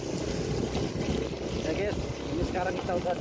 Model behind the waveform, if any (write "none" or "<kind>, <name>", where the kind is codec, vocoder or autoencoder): none